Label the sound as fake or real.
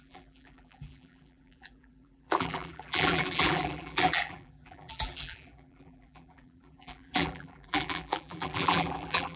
fake